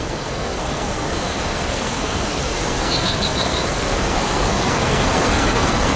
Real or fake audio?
fake